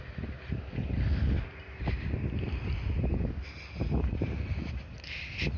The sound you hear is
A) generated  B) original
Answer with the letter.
B